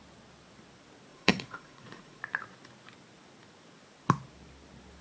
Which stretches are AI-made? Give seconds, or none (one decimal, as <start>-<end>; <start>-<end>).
1.1-2.2